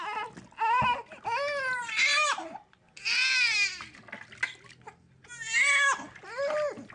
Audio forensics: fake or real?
real